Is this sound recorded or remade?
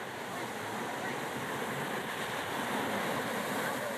recorded